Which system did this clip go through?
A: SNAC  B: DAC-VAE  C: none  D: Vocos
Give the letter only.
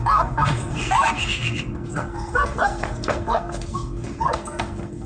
A